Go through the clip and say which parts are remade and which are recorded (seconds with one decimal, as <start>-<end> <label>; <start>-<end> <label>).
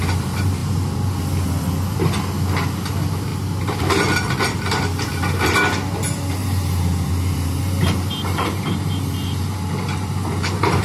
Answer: 0.0-6.4 recorded; 6.4-10.8 remade